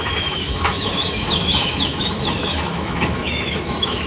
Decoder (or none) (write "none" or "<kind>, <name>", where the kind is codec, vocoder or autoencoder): autoencoder, DAC-VAE